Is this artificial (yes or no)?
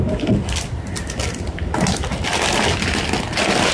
no